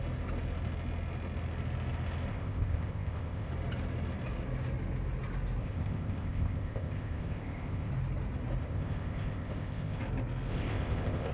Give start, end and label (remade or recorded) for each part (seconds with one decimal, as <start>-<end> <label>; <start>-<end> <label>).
0.0-2.3 recorded; 2.3-3.5 remade; 3.5-5.6 recorded; 5.6-7.9 remade; 7.9-8.6 recorded; 8.6-10.0 remade; 10.0-10.5 recorded; 10.5-11.3 remade